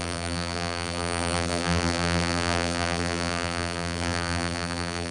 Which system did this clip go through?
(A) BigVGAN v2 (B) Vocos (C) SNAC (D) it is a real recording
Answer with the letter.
A